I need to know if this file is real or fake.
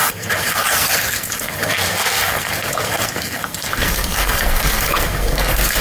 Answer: fake